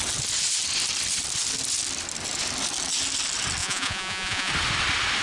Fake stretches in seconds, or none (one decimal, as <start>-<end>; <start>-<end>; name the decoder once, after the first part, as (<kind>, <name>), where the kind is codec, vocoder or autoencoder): 3.6-4.5 (vocoder, Vocos)